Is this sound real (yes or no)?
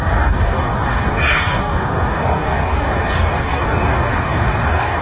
no